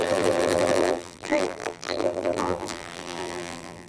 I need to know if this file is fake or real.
fake